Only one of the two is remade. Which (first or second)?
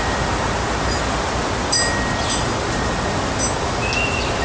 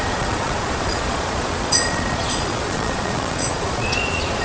second